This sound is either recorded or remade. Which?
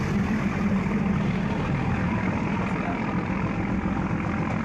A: remade